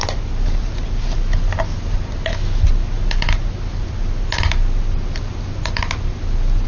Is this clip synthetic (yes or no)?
no